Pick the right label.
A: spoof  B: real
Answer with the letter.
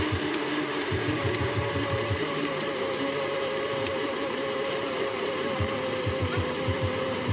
A